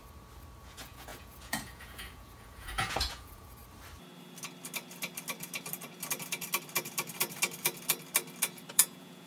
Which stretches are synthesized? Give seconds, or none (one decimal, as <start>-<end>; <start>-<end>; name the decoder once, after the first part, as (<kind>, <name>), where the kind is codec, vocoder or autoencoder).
0.6-3.6 (vocoder, Vocos); 8.7-9.3